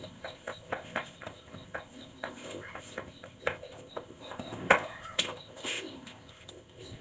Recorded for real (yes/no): no